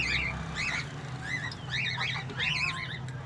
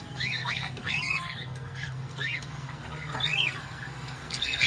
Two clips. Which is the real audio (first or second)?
first